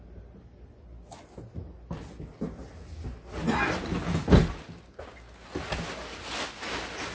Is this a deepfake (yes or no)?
no